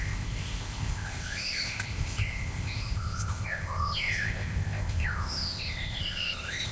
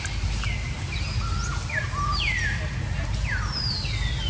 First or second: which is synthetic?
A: first